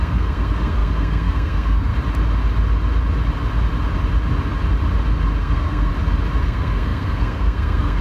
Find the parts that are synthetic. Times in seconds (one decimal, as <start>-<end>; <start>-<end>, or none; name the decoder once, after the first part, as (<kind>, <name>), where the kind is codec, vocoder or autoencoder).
0.0-1.9 (codec, SNAC); 5.4-5.9; 6.4-8.0